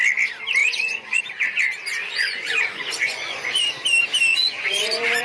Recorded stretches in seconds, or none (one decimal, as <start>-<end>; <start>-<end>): 0.0-0.6; 1.2-1.9; 3.6-4.3